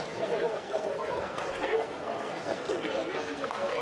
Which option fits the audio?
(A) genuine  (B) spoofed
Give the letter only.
B